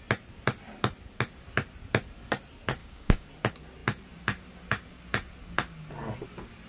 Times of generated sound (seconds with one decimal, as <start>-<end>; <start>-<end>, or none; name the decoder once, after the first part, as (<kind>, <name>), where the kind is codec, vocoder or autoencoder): 2.8-3.3 (codec, DAC)